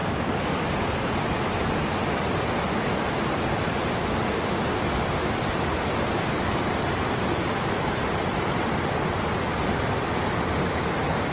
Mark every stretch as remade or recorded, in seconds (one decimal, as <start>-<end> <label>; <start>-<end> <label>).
0.0-0.8 remade; 0.8-11.3 recorded